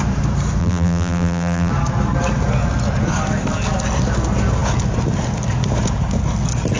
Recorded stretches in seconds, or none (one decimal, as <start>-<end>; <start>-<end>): 0.0-0.6; 1.7-6.8